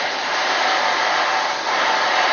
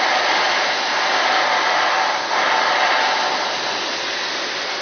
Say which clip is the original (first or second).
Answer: second